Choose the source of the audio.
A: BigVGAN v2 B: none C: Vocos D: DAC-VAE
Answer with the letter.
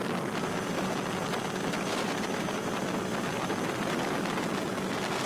B